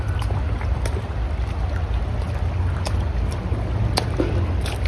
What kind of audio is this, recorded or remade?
recorded